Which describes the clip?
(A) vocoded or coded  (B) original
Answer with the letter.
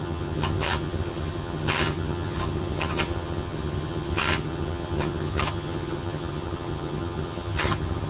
A